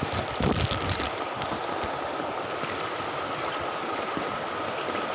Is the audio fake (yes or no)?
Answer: no